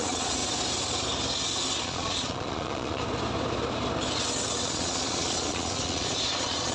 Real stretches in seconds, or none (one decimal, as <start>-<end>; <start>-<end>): 0.4-1.8; 3.0-4.6